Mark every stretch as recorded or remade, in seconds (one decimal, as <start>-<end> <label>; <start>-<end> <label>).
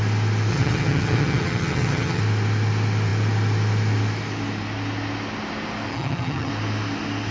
0.0-0.5 recorded; 0.5-2.2 remade; 2.2-5.9 recorded; 5.9-6.5 remade; 6.5-7.3 recorded